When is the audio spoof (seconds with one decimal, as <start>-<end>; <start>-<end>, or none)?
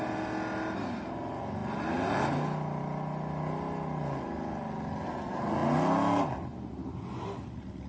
none